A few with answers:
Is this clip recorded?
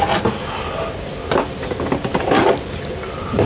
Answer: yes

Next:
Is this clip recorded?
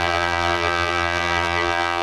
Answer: no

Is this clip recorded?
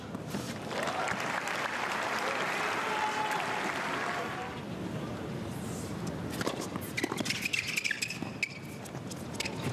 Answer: yes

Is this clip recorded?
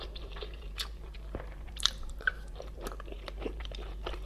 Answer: no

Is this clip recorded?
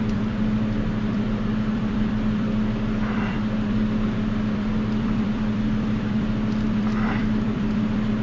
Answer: no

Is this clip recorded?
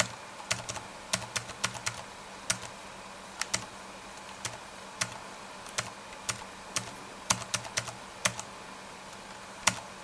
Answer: yes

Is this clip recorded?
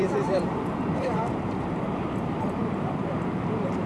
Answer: no